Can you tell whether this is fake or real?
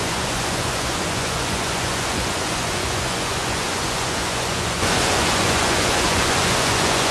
fake